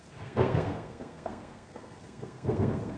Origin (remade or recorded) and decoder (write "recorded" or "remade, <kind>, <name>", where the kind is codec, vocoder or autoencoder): remade, codec, SNAC